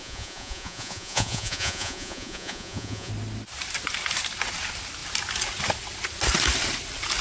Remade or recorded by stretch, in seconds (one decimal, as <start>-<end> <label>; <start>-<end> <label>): 0.0-3.1 remade; 3.1-7.2 recorded